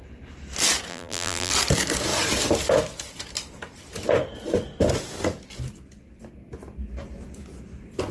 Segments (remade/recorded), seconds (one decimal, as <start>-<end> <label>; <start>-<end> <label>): 0.0-0.9 recorded; 0.9-1.5 remade; 1.5-8.1 recorded